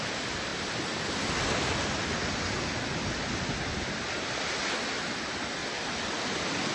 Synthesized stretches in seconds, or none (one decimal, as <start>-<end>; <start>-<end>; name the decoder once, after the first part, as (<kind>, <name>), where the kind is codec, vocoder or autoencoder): 5.6-6.2 (vocoder, BigVGAN v2)

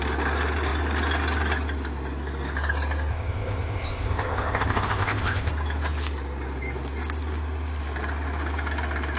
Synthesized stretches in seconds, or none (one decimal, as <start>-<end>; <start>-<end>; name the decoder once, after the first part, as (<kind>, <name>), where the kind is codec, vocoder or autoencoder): 3.1-5.5 (codec, ZipCodec)

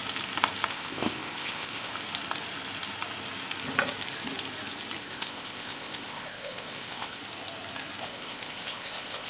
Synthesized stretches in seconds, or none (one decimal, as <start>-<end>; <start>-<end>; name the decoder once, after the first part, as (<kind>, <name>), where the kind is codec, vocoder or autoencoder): 0.7-1.9 (codec, ZipCodec); 5.0-7.2; 8.0-9.3

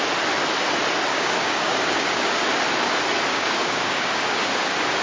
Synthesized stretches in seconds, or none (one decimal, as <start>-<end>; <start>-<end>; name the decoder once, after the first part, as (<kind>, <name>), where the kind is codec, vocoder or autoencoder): 1.1-2.5 (codec, DAC); 3.3-4.4

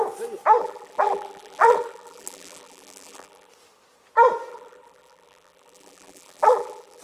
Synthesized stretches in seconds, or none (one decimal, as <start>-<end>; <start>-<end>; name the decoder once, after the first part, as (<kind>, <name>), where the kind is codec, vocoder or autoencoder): 0.6-3.5 (vocoder, BigVGAN v2); 4.5-7.0